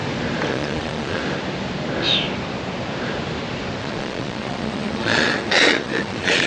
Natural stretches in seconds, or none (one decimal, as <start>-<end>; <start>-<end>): 0.0-0.5; 1.2-3.8